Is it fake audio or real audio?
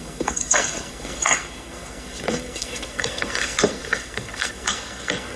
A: fake